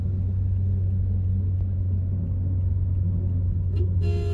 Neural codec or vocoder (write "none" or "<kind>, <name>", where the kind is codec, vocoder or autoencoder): none